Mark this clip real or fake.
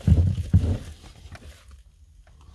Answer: real